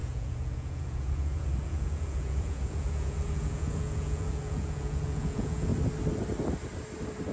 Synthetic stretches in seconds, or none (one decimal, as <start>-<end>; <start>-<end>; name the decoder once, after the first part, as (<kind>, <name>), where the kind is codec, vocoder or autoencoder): 0.0-5.7 (vocoder, Vocos)

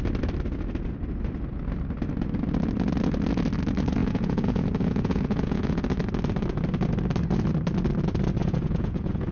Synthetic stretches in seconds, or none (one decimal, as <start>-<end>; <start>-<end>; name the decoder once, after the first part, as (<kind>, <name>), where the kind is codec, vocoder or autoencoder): 4.0-5.8 (vocoder, Vocos); 8.4-9.3